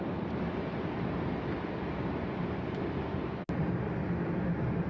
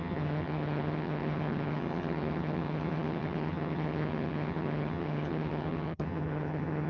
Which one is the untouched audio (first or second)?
first